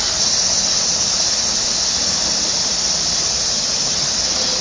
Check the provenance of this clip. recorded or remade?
recorded